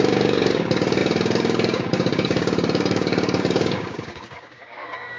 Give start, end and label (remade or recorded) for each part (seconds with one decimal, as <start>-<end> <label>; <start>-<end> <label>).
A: 0.0-5.2 remade